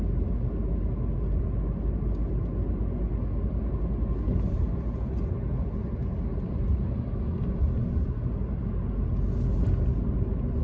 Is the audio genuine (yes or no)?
yes